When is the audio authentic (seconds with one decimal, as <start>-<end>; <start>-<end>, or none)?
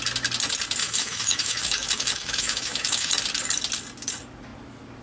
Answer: 0.0-0.8; 3.1-5.0